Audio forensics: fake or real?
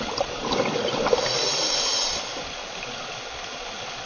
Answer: real